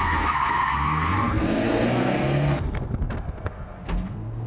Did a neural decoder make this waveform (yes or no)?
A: yes